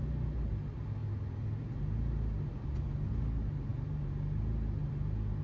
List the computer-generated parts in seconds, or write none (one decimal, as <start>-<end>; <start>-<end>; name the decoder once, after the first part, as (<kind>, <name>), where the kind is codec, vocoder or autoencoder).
none